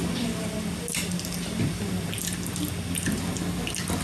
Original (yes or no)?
yes